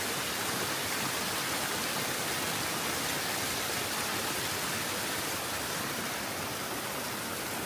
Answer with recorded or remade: recorded